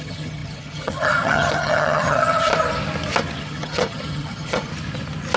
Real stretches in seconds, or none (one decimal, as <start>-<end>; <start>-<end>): 2.5-3.4; 4.7-5.4